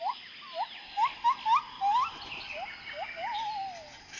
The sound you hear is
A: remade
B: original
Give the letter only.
B